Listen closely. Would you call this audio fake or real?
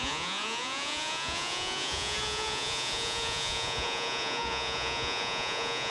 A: fake